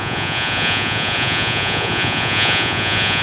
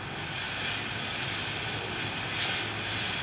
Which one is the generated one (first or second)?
first